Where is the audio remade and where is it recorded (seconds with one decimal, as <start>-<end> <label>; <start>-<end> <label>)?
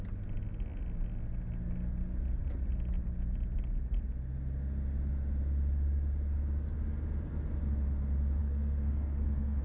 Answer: 0.0-8.4 recorded; 8.4-9.6 remade